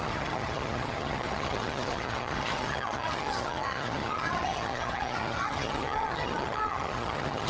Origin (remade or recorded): remade